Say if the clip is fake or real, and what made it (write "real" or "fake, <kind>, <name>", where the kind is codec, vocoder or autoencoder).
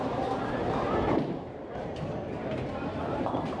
fake, vocoder, BigVGAN v2